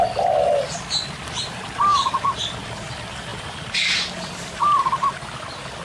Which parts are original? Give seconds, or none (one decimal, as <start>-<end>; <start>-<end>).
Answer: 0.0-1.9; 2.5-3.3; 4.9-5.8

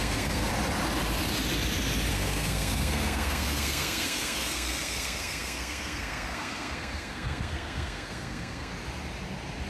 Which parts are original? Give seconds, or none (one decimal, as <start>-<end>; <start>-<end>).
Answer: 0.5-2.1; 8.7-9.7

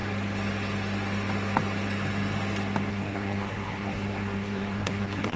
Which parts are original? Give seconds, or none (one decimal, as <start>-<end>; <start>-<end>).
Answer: 0.0-2.9

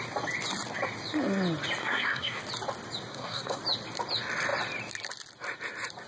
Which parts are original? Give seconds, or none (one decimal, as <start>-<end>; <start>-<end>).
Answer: 0.0-1.8; 2.4-3.1; 3.6-6.1

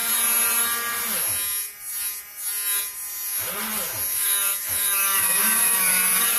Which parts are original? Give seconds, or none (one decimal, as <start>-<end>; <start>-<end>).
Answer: 0.0-4.1; 6.0-6.4